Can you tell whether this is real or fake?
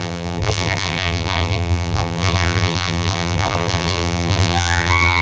fake